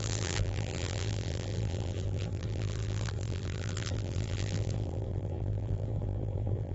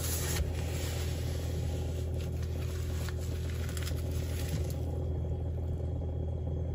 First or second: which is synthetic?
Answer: first